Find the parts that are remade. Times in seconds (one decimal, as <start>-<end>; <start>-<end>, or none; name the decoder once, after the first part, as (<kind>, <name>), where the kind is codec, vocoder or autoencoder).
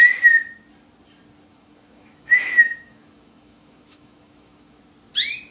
1.5-4.8 (autoencoder, DAC-VAE)